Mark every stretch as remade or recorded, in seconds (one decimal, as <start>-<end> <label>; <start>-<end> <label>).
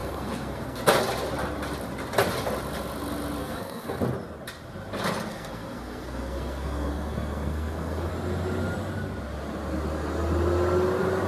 0.0-0.8 remade; 0.8-3.4 recorded; 3.4-4.0 remade; 4.0-5.3 recorded; 5.3-8.1 remade; 8.1-11.3 recorded